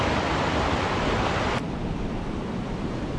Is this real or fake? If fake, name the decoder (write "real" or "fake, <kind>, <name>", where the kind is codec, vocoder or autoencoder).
real